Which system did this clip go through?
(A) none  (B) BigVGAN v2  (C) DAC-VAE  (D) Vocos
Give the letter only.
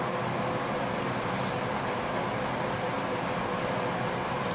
B